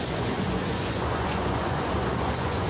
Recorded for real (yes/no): no